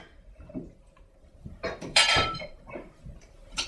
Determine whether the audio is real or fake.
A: fake